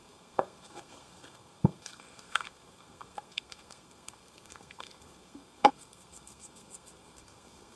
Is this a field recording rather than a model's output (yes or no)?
no